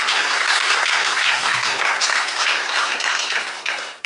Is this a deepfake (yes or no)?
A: yes